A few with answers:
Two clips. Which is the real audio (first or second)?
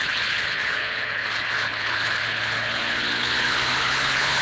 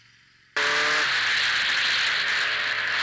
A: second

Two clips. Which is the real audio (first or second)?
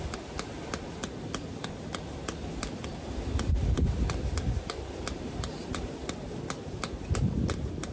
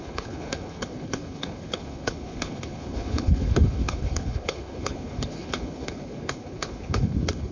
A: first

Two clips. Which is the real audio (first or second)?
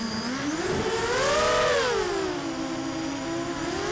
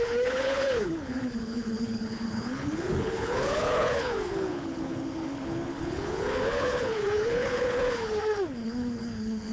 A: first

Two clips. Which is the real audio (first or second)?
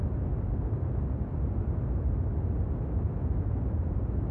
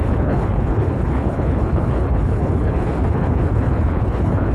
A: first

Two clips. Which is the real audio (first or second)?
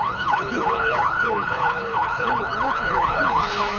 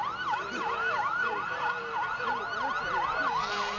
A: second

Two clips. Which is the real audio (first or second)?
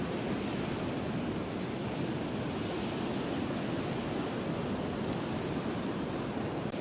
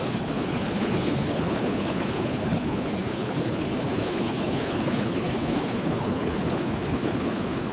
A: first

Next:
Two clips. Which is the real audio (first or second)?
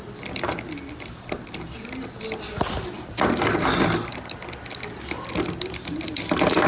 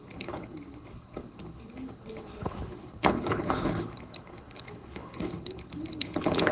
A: first